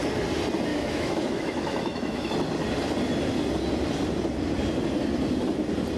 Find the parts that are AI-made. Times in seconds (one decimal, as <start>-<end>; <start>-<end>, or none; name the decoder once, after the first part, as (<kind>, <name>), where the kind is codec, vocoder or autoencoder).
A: 0.7-2.3 (autoencoder, DAC-VAE)